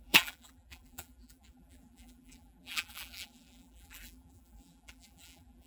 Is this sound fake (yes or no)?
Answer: yes